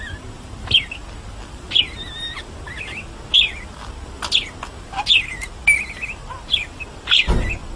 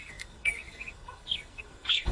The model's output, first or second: second